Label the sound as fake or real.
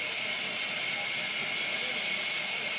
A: real